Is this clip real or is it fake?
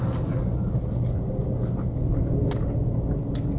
real